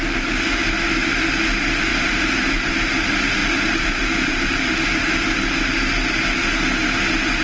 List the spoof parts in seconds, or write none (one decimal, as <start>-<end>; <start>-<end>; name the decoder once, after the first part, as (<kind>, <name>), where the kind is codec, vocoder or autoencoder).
1.9-2.7 (vocoder, BigVGAN v2); 3.4-4.7